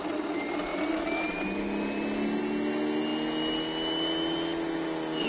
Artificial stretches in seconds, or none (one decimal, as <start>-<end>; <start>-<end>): none